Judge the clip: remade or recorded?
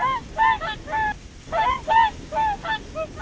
recorded